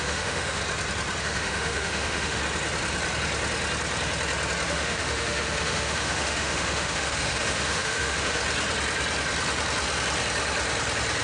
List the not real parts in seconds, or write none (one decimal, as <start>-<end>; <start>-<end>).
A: 0.0-0.6; 1.2-2.4; 4.7-8.4